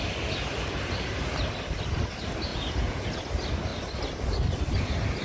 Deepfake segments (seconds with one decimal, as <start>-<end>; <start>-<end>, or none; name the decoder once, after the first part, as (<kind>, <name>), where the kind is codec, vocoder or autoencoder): 2.5-3.1 (vocoder, Vocos)